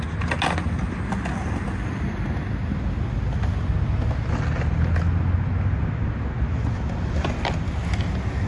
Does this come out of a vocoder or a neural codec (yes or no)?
no